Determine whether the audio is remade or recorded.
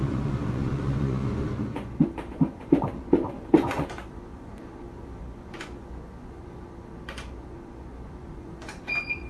remade